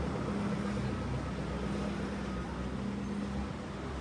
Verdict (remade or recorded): recorded